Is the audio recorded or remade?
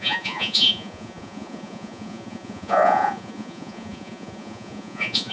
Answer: remade